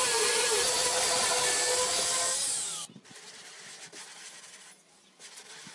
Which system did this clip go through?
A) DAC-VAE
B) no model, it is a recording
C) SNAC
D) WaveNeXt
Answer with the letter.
B